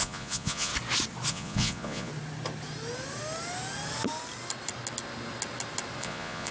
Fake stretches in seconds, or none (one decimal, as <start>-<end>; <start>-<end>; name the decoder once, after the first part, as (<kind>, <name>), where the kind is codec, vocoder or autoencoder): 0.0-0.7 (vocoder, Vocos); 1.3-2.1; 6.0-6.5